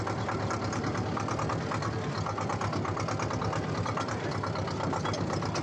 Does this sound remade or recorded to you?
recorded